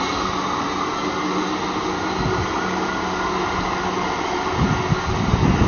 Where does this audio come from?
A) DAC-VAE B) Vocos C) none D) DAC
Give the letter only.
C